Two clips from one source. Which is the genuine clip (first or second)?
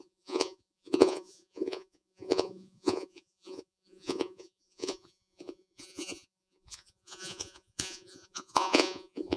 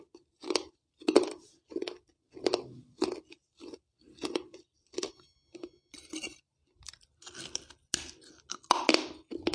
second